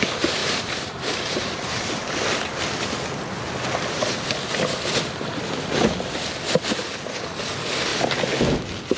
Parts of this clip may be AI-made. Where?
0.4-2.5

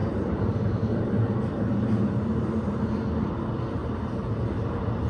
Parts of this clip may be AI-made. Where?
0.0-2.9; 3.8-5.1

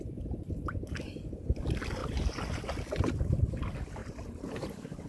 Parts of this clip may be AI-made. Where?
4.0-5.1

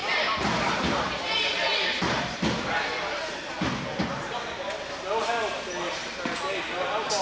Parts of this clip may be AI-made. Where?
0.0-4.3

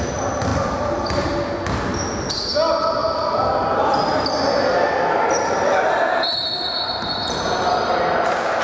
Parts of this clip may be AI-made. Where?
0.5-1.3

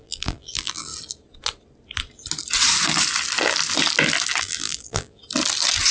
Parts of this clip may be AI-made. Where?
0.0-0.9; 4.4-5.2